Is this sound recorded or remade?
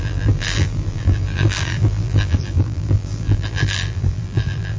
remade